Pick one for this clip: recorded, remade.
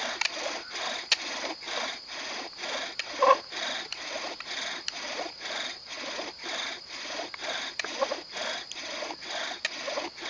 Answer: recorded